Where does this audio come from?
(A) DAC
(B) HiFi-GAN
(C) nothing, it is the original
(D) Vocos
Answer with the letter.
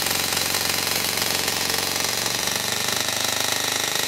D